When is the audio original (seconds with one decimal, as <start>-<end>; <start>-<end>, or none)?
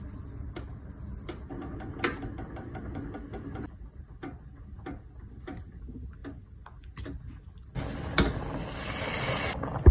0.0-9.9